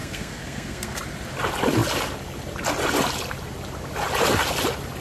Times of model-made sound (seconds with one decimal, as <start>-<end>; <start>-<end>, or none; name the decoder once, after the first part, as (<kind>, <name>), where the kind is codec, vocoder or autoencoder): 0.0-1.0 (codec, SNAC)